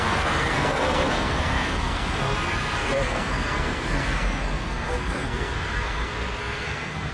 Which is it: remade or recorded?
remade